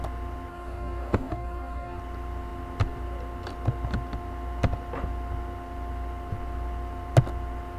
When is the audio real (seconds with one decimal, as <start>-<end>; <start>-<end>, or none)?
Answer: 0.0-0.5; 2.0-7.8